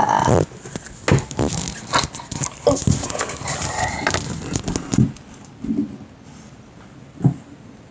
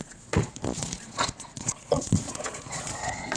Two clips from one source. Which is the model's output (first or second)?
second